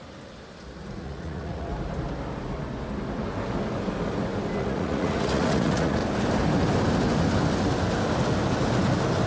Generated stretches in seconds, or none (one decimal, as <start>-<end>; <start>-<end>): 0.9-1.7; 4.6-6.0